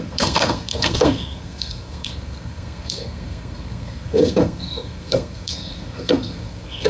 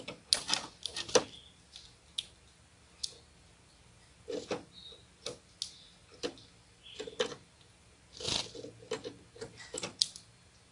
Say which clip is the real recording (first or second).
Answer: second